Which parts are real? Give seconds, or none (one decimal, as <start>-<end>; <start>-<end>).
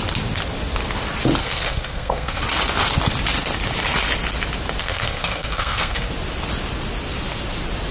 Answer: 0.0-1.4; 2.4-4.8; 6.1-7.9